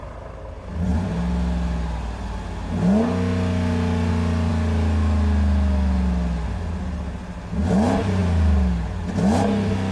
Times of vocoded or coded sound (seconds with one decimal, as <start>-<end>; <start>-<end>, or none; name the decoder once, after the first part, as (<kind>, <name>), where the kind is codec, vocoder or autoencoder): none